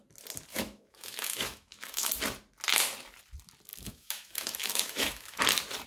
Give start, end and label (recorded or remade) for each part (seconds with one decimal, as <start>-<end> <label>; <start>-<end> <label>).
0.0-0.5 recorded; 0.5-2.1 remade; 2.1-3.7 recorded; 3.7-5.4 remade; 5.4-5.9 recorded